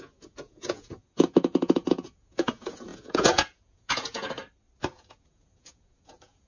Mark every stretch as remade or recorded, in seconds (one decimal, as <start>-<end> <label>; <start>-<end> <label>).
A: 0.0-4.4 remade; 4.4-4.9 recorded; 4.9-6.5 remade